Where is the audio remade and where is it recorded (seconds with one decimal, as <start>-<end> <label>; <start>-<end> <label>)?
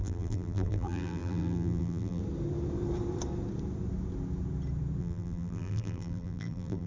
0.0-2.2 remade; 2.2-5.0 recorded; 5.0-6.9 remade